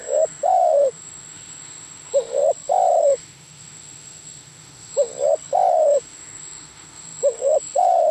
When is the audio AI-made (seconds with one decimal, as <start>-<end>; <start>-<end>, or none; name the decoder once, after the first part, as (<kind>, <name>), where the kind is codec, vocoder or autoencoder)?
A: 0.0-2.4 (autoencoder, DAC-VAE); 3.0-5.1; 5.7-8.1